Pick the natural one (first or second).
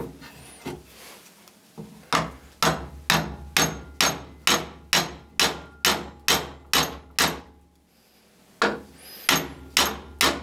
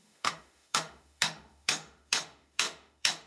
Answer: first